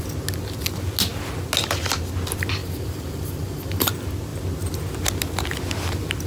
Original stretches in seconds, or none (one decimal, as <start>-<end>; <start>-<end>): 0.0-2.6; 3.9-6.3